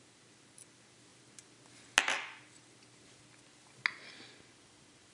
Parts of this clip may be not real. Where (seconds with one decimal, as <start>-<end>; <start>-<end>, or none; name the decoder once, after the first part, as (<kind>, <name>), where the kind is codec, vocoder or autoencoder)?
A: none